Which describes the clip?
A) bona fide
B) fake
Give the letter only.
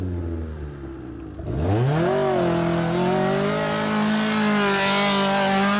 A